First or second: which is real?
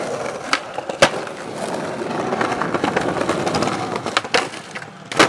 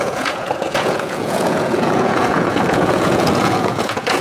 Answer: first